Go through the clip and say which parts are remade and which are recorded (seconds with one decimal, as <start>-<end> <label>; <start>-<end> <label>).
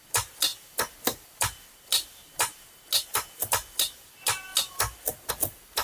0.0-5.8 recorded